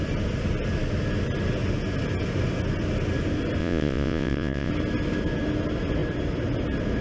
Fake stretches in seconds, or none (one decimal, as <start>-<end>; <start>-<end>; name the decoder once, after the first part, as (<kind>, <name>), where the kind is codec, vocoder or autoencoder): 3.6-4.7 (vocoder, Vocos)